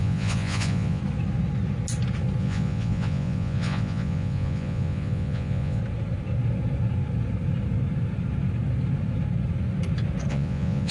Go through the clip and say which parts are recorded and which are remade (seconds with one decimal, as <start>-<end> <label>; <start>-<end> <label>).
0.0-1.0 remade; 1.0-2.4 recorded; 2.4-5.8 remade; 5.8-10.3 recorded; 10.3-10.9 remade